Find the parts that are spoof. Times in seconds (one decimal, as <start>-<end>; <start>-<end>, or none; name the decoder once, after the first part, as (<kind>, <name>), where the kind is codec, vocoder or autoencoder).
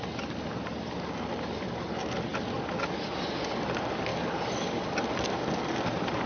none